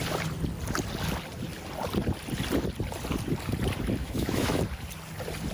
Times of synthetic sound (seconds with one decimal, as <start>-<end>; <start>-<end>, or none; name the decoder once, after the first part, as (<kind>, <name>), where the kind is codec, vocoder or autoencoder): 4.0-4.6 (autoencoder, DAC-VAE)